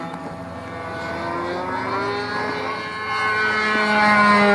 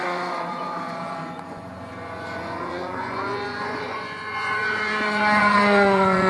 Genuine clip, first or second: first